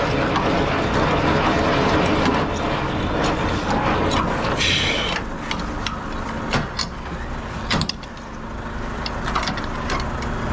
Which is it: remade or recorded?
recorded